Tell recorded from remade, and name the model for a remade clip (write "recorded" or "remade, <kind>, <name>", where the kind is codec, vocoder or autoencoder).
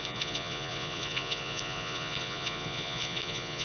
remade, vocoder, Vocos